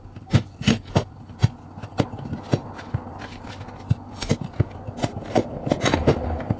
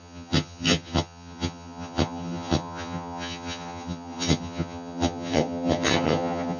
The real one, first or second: first